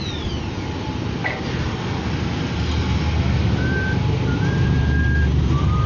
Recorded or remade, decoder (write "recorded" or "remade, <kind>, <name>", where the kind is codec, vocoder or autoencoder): recorded